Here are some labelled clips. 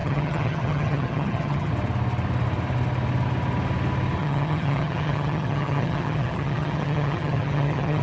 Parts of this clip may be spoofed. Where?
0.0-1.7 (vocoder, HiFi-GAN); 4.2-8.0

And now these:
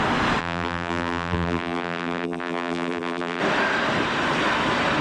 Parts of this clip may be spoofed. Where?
0.4-3.4 (vocoder, BigVGAN v2)